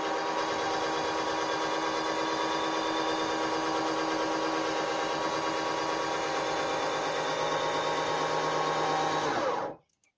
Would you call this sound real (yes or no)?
yes